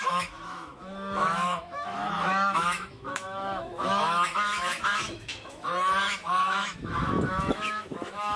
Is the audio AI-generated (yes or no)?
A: yes